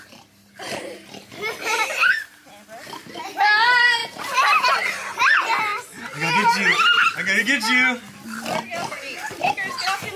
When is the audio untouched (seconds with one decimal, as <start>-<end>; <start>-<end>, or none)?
0.0-10.2